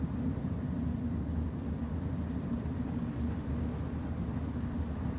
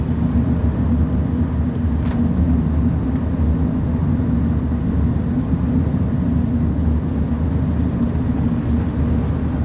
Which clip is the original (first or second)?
second